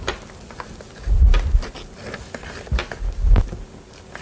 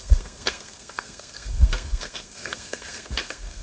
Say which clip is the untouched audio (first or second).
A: first